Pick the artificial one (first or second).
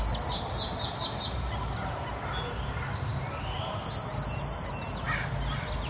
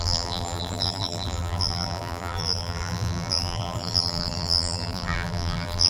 second